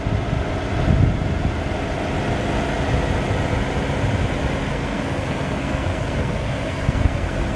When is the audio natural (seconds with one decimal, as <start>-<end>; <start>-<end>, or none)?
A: 0.0-4.7